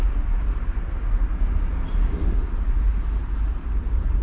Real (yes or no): yes